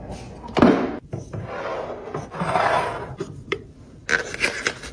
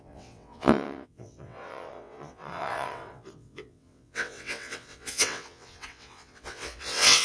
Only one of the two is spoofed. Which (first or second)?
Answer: second